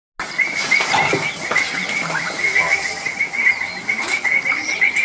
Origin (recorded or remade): recorded